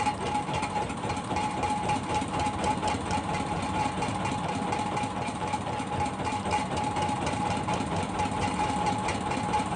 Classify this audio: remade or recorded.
remade